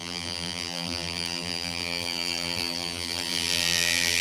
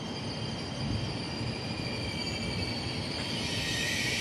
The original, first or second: second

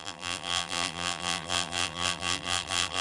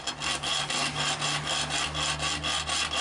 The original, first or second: second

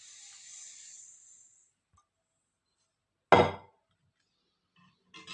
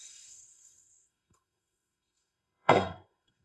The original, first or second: first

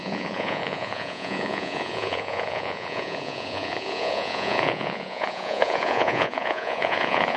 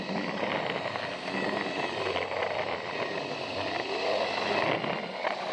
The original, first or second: second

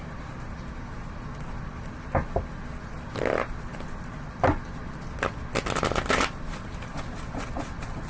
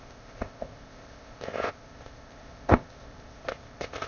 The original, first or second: first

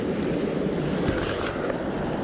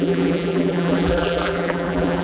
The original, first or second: first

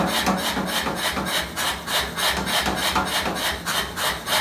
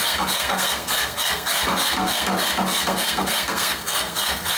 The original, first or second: first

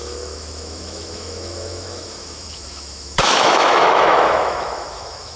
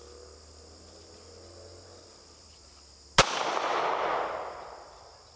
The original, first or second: second